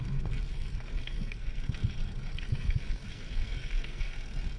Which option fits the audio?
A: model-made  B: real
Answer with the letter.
A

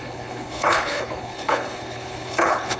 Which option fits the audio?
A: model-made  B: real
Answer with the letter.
A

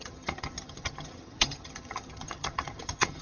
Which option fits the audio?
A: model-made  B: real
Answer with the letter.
A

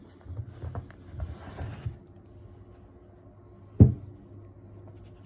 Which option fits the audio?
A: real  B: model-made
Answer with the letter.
A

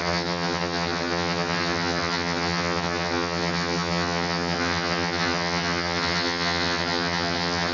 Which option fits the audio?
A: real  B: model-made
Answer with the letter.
B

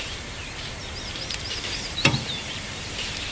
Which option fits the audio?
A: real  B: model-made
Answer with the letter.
B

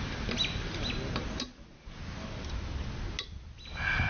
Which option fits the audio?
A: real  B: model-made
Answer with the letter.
A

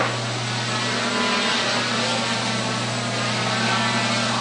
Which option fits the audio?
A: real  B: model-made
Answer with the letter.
A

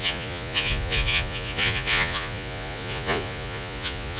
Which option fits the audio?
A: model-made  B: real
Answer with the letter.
A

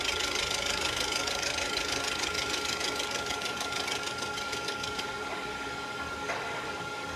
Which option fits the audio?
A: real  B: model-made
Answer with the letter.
B